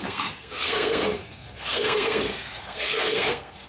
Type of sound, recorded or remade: remade